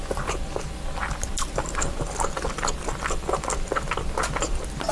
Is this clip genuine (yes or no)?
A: yes